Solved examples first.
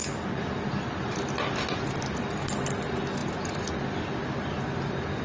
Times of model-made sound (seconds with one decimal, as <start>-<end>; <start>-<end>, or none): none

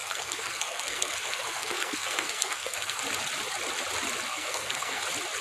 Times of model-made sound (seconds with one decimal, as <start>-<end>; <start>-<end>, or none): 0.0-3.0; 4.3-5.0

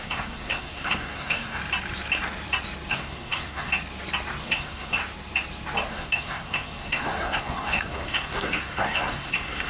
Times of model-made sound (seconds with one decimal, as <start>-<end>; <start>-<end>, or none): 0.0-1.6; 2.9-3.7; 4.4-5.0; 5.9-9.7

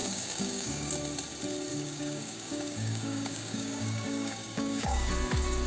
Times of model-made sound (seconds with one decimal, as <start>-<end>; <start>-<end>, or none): 0.0-0.9; 1.7-5.1